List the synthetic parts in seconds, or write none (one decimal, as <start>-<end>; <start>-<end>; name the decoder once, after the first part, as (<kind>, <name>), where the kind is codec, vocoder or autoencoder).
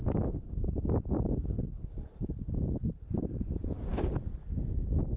0.0-2.3 (codec, DAC)